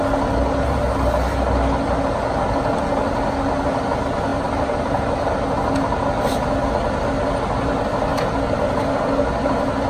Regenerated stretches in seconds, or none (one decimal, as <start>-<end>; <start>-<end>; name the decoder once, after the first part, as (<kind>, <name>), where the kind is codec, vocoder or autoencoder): 4.3-5.4 (vocoder, BigVGAN v2)